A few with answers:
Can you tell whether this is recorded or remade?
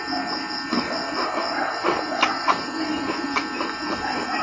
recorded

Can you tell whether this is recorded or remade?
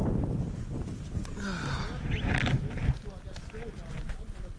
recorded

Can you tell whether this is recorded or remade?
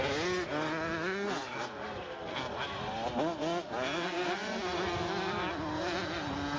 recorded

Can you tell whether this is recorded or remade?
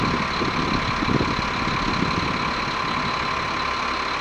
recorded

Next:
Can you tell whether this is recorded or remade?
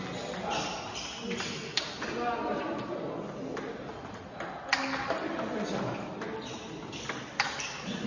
recorded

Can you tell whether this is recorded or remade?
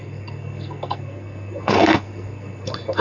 remade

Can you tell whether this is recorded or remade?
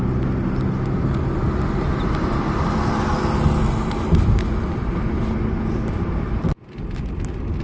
recorded